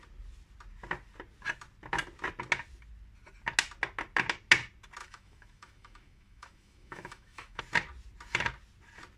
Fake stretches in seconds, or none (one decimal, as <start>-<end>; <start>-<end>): 5.0-7.6

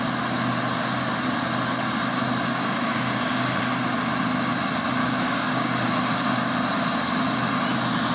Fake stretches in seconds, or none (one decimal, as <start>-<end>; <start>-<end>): 2.5-3.6; 5.0-5.7

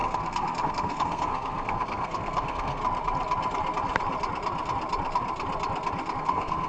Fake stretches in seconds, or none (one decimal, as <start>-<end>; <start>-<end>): 0.0-2.8; 6.2-6.7

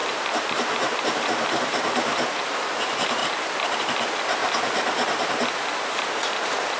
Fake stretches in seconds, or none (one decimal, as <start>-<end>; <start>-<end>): 0.0-3.2; 3.8-4.4; 6.1-6.8

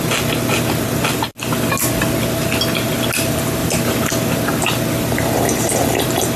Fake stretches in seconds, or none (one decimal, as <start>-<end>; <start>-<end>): none

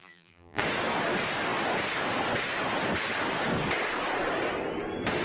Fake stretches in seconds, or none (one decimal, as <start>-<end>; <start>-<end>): 0.0-0.6

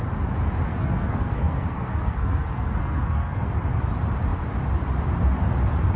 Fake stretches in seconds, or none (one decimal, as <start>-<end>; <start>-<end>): 0.7-3.5